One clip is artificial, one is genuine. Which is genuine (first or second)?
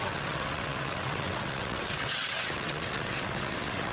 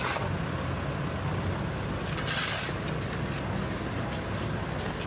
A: second